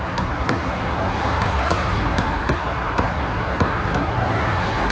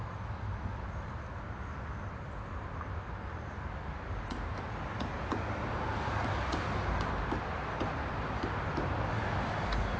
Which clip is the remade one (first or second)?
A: first